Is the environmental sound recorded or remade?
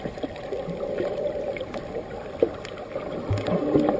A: recorded